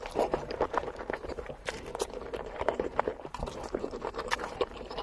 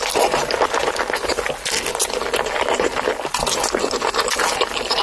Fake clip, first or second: first